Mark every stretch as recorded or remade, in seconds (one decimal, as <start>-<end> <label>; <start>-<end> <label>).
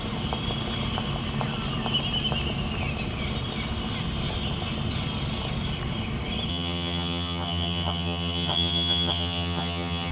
0.0-6.5 recorded; 6.5-10.1 remade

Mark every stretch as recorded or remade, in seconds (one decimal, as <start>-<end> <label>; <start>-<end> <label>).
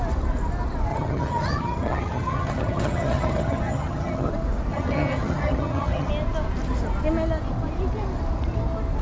0.0-0.9 recorded; 0.9-4.3 remade; 4.3-4.7 recorded; 4.7-6.1 remade; 6.1-9.0 recorded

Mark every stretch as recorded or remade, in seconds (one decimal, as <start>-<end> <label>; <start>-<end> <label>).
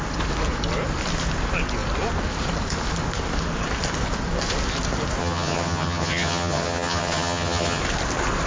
0.0-5.2 recorded; 5.2-7.8 remade; 7.8-8.5 recorded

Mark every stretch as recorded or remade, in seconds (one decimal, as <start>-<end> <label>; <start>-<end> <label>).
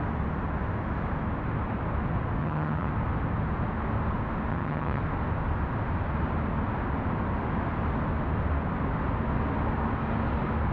0.0-2.4 recorded; 2.4-2.9 remade; 2.9-4.5 recorded; 4.5-5.0 remade; 5.0-10.7 recorded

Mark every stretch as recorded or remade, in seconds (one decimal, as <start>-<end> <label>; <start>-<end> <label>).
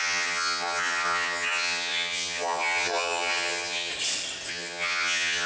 0.0-3.9 remade; 3.9-4.5 recorded; 4.5-5.5 remade